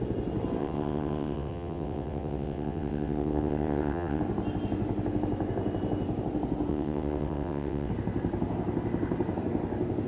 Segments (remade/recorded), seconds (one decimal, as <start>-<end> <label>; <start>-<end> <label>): 0.0-0.6 recorded; 0.6-4.2 remade; 4.2-6.7 recorded; 6.7-7.9 remade; 7.9-10.1 recorded